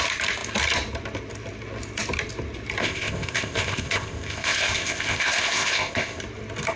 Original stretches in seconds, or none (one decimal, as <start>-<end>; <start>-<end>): 0.0-2.8; 6.2-6.8